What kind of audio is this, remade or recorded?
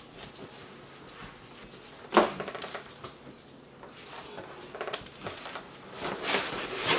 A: recorded